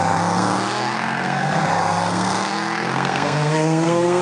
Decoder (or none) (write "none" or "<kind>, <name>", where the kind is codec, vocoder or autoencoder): codec, SNAC